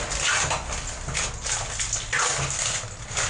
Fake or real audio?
real